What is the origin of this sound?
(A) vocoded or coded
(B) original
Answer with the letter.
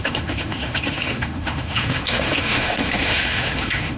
A